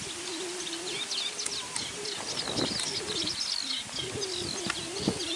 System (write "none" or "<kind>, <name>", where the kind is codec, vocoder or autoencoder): none